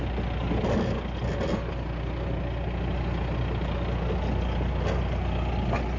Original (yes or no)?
yes